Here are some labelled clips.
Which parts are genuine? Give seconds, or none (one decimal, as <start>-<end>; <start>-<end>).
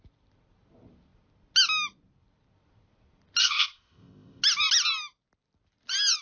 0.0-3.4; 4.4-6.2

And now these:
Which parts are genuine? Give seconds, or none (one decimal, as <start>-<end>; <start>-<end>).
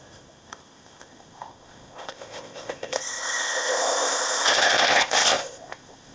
none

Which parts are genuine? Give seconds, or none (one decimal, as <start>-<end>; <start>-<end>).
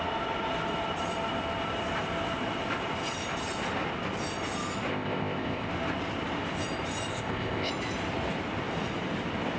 0.0-4.9; 5.7-7.1; 7.7-9.6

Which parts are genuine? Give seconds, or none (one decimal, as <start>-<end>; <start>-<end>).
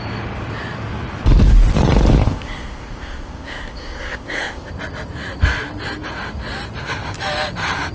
0.0-2.2; 4.7-7.9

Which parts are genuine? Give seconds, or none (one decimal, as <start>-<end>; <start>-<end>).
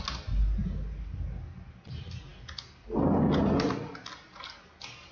0.0-5.1